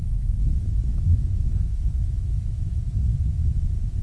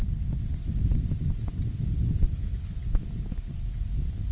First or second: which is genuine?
second